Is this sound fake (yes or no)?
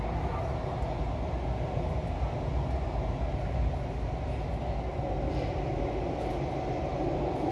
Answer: no